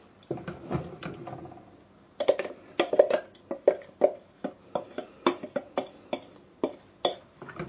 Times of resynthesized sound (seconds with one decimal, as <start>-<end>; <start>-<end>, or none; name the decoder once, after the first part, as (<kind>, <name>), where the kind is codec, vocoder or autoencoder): none